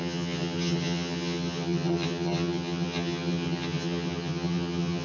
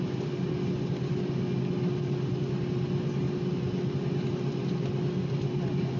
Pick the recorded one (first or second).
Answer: second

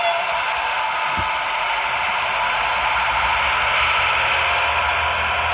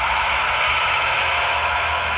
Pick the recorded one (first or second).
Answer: first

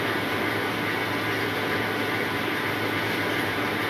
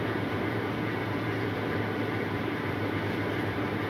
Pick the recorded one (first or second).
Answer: first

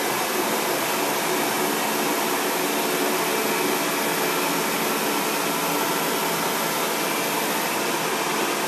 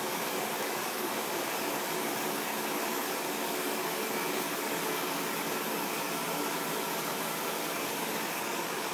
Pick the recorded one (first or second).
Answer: first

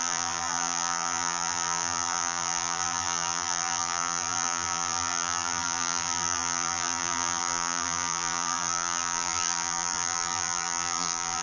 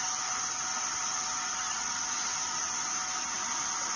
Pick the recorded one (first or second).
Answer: second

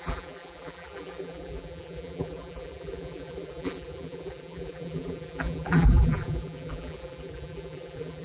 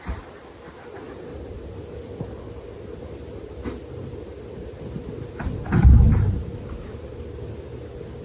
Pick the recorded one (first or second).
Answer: second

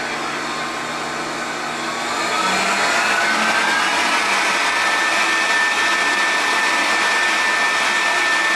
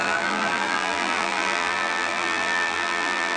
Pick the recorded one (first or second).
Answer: first